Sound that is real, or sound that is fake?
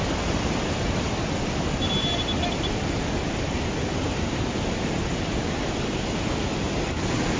real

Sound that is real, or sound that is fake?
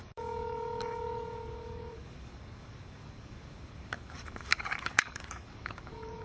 fake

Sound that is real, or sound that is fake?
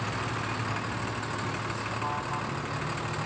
real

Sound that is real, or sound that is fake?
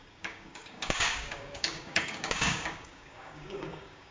fake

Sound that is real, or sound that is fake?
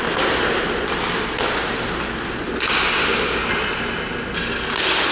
real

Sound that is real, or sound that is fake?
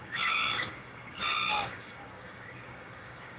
fake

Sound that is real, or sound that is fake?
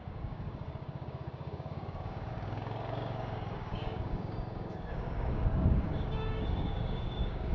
fake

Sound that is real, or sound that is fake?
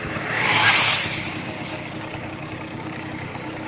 fake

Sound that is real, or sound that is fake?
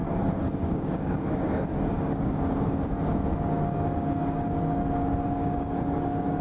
fake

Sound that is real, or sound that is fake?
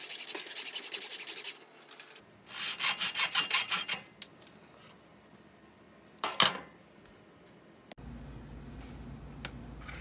real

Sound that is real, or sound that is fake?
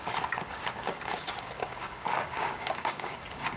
fake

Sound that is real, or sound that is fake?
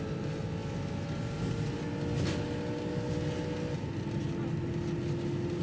real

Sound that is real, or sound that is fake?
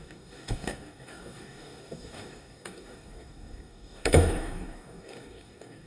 fake